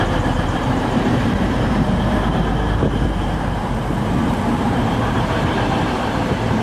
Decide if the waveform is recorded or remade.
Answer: remade